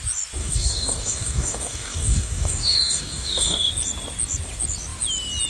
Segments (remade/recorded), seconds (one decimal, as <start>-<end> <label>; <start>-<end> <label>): 0.0-0.4 recorded; 0.4-3.7 remade; 3.7-5.5 recorded